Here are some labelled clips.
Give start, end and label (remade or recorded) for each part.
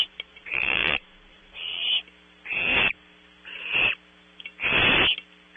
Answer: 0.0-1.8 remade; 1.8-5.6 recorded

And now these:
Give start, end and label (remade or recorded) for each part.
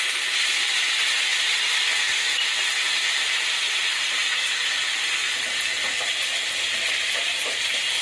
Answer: 0.0-8.0 recorded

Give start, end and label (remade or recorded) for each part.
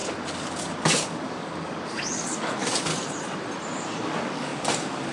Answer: 0.0-2.9 remade; 2.9-4.0 recorded; 4.0-5.1 remade